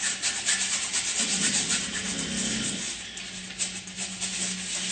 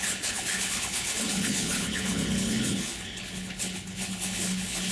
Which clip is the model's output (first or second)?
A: second